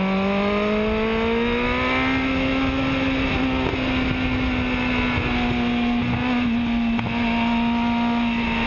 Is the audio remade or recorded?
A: recorded